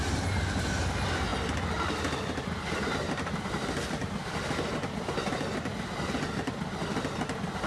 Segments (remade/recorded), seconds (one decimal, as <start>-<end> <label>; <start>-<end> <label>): 0.0-7.7 recorded